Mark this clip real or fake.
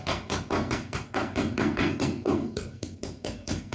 fake